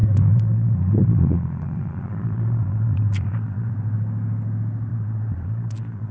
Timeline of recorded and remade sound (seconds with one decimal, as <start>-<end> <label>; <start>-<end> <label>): 0.0-3.7 remade; 3.7-4.9 recorded; 4.9-6.1 remade